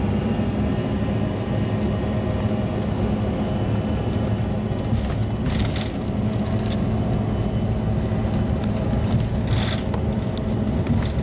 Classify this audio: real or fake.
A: real